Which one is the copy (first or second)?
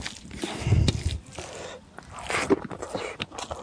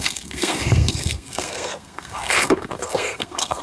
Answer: second